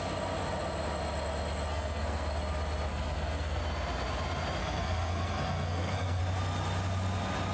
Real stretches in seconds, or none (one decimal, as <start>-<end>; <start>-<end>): 0.0-1.7; 2.3-2.9; 3.6-4.6; 6.2-7.5